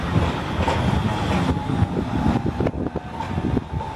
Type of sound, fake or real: real